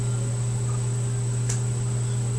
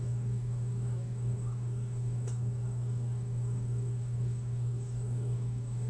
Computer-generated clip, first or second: second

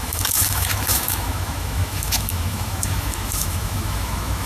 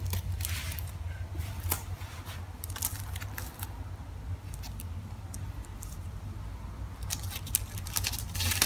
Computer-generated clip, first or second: first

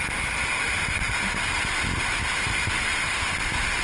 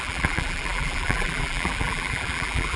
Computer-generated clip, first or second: second